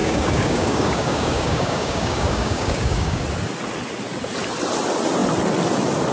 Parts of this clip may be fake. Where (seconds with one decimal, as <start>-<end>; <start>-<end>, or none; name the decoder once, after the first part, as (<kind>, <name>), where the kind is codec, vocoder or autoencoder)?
0.0-3.2 (codec, DAC)